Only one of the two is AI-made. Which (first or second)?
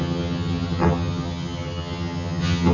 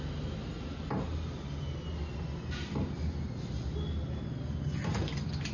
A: first